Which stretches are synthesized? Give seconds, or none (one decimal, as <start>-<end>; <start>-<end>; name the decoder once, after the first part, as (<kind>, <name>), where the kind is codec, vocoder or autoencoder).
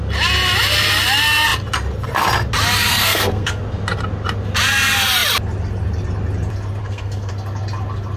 2.9-3.6 (codec, SNAC); 6.8-7.3